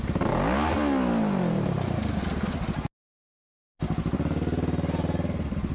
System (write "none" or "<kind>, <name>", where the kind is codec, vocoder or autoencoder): none